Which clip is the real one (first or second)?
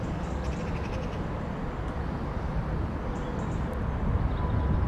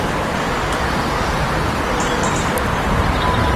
first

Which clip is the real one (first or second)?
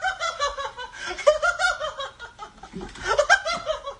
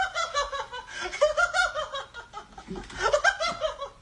second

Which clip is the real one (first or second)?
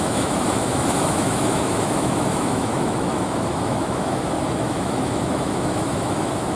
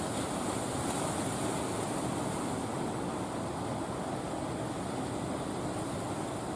second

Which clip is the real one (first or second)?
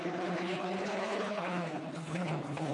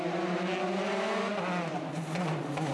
second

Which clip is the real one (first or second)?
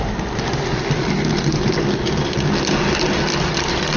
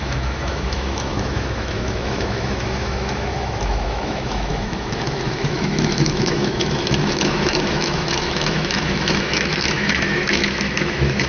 first